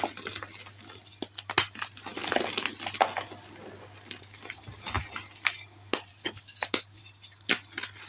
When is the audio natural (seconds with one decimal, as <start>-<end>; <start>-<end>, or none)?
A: 0.0-6.1; 7.0-8.1